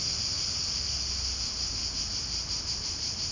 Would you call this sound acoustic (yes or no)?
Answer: yes